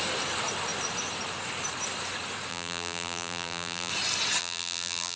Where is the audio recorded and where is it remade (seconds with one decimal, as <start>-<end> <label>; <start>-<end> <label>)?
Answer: 0.0-2.5 recorded; 2.5-3.9 remade; 3.9-4.4 recorded; 4.4-5.2 remade